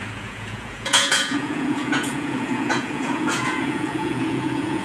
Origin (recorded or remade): remade